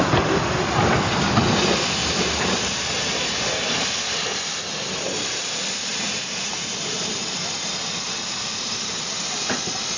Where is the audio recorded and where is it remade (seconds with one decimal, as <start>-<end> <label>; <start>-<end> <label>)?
0.0-2.0 recorded; 2.0-3.1 remade; 3.1-5.9 recorded; 5.9-7.1 remade; 7.1-10.0 recorded